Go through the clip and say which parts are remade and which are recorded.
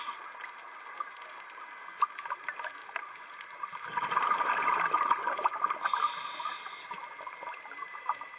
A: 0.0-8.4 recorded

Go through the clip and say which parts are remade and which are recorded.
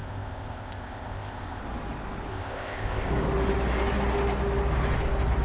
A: 0.0-1.6 remade; 1.6-2.3 recorded; 2.3-3.1 remade; 3.1-5.4 recorded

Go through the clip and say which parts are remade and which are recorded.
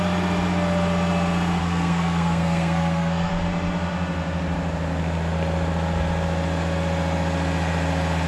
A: 0.0-1.6 recorded; 1.6-3.3 remade; 3.3-8.3 recorded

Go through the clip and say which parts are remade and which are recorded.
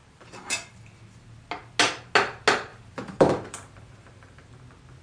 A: 0.0-0.8 remade; 0.8-2.7 recorded; 2.7-4.5 remade; 4.5-5.0 recorded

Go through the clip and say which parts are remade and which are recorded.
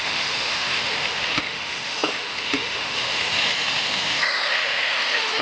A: 0.0-5.4 remade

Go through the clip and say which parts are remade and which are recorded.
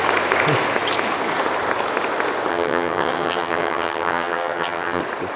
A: 0.0-2.5 recorded; 2.5-5.0 remade; 5.0-5.4 recorded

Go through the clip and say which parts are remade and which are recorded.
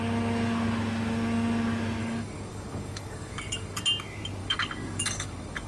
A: 0.0-2.0 recorded; 2.0-3.8 remade; 3.8-4.4 recorded; 4.4-5.7 remade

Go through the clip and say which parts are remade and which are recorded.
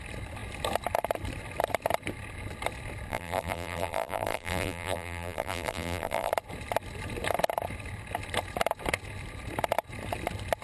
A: 0.0-3.1 recorded; 3.1-6.3 remade; 6.3-10.6 recorded